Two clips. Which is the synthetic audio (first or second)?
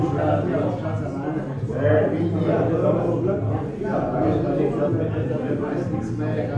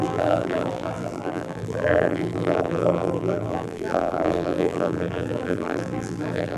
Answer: second